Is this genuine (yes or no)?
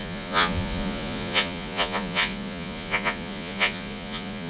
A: no